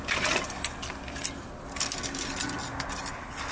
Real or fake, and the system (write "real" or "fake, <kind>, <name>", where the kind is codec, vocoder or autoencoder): real